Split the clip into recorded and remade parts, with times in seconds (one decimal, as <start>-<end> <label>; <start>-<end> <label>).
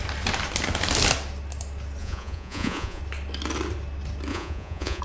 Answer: 0.0-2.0 recorded; 2.0-3.0 remade; 3.0-4.3 recorded; 4.3-5.0 remade